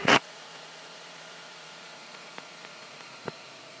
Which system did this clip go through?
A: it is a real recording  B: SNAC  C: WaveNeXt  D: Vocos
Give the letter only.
D